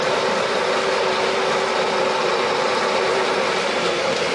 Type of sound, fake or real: fake